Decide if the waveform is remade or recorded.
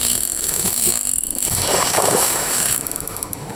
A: remade